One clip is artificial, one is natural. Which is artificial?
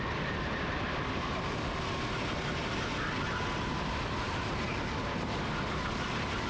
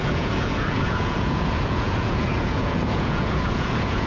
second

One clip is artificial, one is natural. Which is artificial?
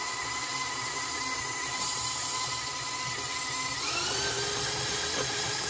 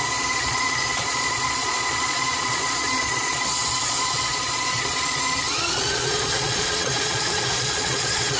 second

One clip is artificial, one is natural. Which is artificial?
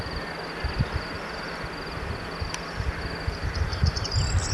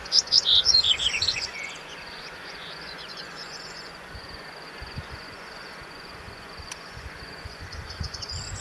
second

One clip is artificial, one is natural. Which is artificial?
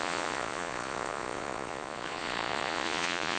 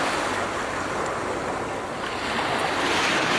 first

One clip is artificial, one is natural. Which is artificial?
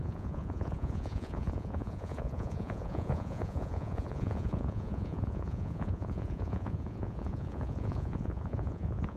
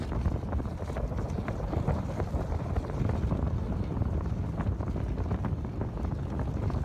first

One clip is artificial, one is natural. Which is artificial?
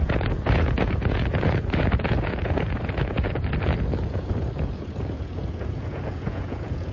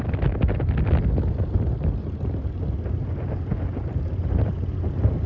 first